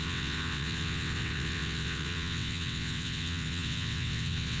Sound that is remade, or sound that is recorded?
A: remade